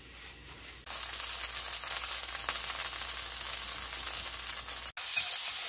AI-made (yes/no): no